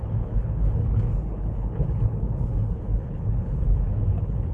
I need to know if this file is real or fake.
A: fake